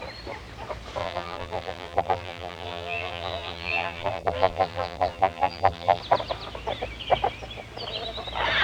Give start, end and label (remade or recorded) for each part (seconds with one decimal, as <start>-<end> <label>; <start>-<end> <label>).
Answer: 0.0-1.0 recorded; 1.0-6.0 remade; 6.0-8.6 recorded